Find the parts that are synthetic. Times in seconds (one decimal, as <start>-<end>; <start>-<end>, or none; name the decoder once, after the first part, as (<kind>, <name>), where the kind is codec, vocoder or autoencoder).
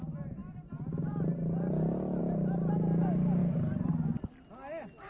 none